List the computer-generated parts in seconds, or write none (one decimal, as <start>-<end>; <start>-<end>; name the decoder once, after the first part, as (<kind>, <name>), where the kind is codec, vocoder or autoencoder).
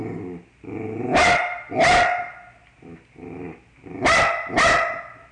none